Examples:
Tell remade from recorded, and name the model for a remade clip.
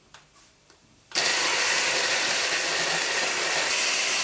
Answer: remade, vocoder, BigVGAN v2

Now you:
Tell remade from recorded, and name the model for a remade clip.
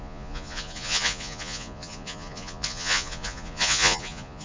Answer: remade, vocoder, Vocos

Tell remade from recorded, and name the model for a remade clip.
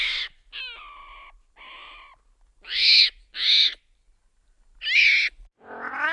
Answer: recorded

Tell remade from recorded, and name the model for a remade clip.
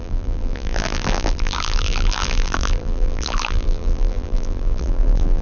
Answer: remade, vocoder, BigVGAN v2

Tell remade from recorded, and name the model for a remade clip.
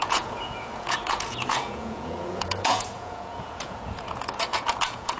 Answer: remade, vocoder, Vocos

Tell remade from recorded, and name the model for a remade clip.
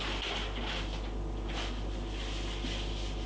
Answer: recorded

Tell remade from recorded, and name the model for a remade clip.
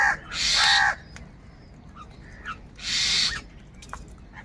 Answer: recorded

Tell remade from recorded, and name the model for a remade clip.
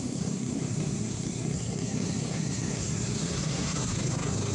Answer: remade, codec, SNAC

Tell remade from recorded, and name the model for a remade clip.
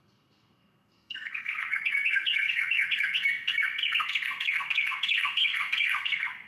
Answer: remade, codec, SNAC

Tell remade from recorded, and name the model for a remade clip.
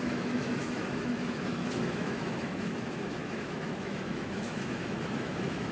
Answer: remade, autoencoder, DAC-VAE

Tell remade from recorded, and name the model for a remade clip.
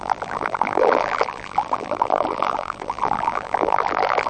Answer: remade, vocoder, BigVGAN v2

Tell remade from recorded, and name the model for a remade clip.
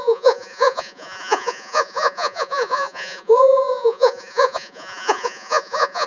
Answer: remade, vocoder, Vocos